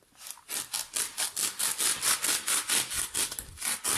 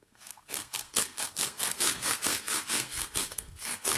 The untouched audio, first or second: first